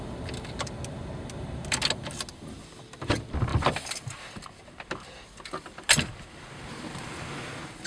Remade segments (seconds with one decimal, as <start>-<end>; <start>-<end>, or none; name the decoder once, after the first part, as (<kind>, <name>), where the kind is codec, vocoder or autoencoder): none